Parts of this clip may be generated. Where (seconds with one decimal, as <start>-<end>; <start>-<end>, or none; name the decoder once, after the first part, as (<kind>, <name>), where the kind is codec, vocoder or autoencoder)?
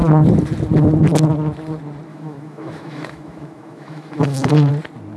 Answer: 2.1-4.7 (autoencoder, DAC-VAE)